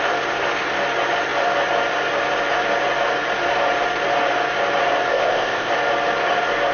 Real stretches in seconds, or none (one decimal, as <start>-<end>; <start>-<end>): 0.0-5.1; 5.7-6.7